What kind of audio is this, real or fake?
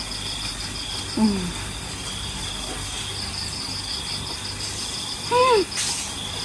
real